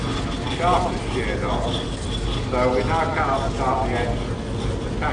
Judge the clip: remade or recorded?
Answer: recorded